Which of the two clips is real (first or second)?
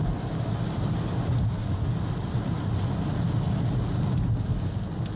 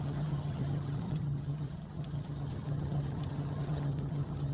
first